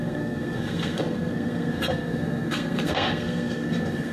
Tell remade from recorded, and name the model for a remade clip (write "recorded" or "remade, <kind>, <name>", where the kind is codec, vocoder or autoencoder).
remade, codec, SNAC